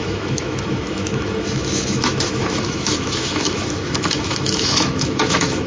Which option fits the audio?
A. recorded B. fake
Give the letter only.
B